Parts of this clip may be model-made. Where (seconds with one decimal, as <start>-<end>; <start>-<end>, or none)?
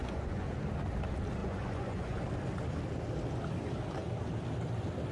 0.0-0.5; 1.4-2.2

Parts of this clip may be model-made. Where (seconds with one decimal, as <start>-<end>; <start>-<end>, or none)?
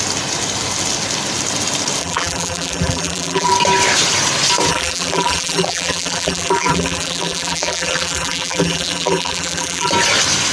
2.0-3.5; 4.7-9.9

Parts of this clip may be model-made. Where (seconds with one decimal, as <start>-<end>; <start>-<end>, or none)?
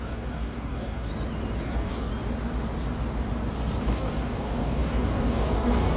0.0-1.1; 1.6-2.1; 3.8-6.0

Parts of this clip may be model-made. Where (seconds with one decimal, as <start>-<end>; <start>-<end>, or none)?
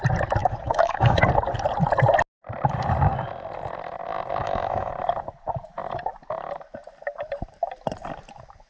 0.4-1.2; 4.4-4.9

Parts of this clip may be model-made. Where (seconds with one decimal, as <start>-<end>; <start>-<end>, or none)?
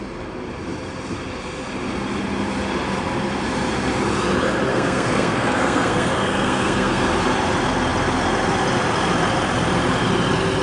4.7-7.0